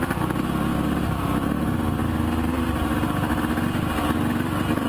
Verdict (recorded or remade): recorded